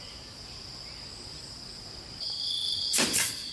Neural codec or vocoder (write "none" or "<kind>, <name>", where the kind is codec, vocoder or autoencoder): none